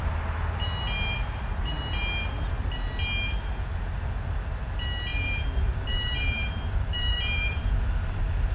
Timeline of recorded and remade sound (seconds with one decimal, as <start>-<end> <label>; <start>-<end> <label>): 0.0-5.1 recorded; 5.1-7.6 remade; 7.6-8.5 recorded